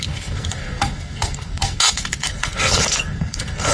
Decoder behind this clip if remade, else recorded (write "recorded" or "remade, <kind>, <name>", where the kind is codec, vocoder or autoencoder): remade, codec, SNAC